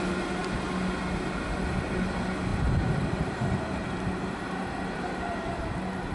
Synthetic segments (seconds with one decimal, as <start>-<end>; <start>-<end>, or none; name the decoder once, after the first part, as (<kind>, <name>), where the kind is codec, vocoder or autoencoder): 2.5-5.6 (vocoder, BigVGAN v2)